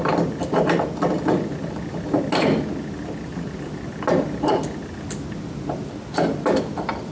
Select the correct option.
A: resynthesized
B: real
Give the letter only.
B